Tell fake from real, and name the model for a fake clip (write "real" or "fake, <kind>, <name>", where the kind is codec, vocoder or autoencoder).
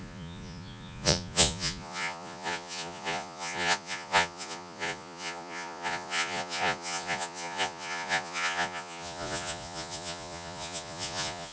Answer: fake, vocoder, Vocos